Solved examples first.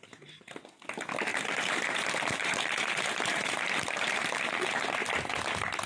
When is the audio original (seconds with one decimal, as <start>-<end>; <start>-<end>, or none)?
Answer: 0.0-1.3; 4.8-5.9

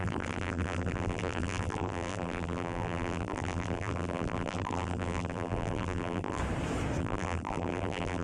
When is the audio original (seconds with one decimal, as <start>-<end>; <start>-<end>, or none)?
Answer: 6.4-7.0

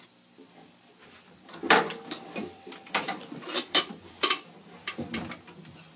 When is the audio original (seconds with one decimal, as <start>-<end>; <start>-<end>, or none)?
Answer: 0.0-1.6; 5.2-6.0

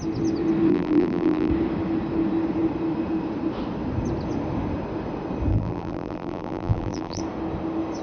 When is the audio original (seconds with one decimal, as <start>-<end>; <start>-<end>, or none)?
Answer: 0.0-0.7; 1.5-5.5; 7.2-8.0

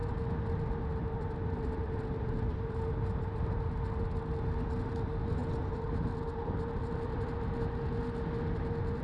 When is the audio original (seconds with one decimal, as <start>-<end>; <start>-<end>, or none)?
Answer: 0.0-9.0

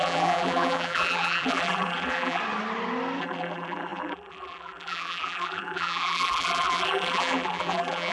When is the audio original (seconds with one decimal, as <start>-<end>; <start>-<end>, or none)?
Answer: 2.4-3.2